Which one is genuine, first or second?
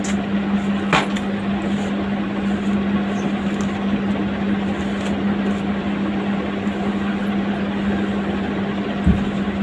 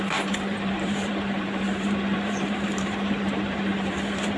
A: first